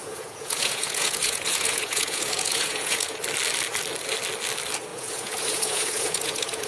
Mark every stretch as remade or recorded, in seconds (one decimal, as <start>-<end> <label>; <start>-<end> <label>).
0.0-3.2 remade; 3.2-4.9 recorded; 4.9-6.7 remade